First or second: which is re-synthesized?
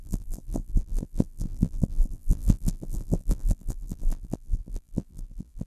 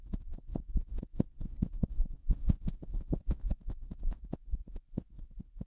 first